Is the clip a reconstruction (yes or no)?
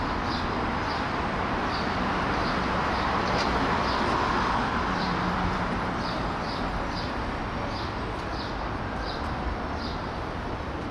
no